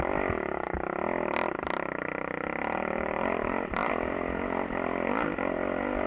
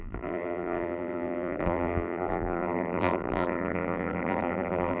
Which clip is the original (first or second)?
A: first